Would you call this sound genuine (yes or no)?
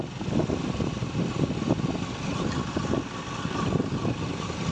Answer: yes